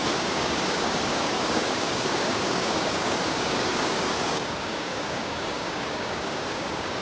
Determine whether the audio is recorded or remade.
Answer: remade